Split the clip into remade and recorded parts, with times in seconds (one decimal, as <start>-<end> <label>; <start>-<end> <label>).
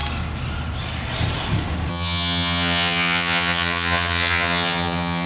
0.0-1.9 recorded; 1.9-5.3 remade